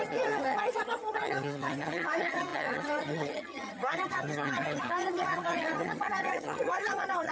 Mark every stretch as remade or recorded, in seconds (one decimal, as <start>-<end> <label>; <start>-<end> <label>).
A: 0.0-7.3 remade